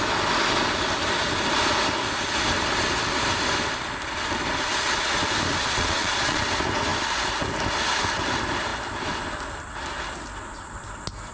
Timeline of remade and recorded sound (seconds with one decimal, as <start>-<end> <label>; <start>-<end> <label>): 0.0-5.6 recorded; 5.6-6.4 remade; 6.4-11.3 recorded